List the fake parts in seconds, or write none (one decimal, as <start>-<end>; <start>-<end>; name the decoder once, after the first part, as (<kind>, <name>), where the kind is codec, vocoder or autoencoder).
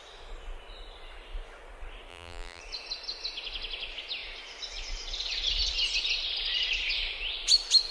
2.1-2.6 (vocoder, BigVGAN v2)